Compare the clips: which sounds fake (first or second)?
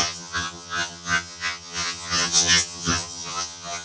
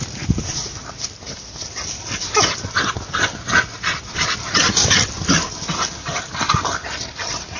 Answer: first